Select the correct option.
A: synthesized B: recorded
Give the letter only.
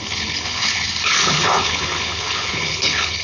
A